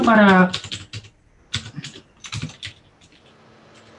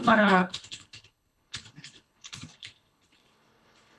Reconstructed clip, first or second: second